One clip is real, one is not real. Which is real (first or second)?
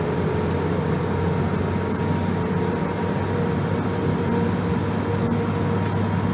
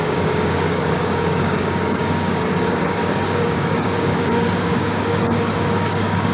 first